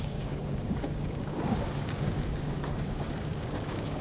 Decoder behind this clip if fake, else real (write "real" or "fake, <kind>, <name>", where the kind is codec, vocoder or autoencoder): fake, codec, DAC